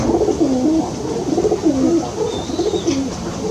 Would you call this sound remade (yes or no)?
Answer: no